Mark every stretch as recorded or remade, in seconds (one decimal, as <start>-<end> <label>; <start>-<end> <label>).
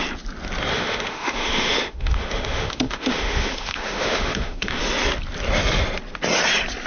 0.0-0.7 recorded; 0.7-4.8 remade; 4.8-6.9 recorded